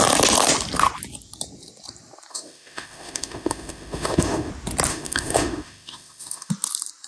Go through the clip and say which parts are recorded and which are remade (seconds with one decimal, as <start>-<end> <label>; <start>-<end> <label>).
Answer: 0.0-2.3 recorded; 2.3-4.5 remade; 4.5-4.9 recorded; 4.9-6.5 remade; 6.5-7.1 recorded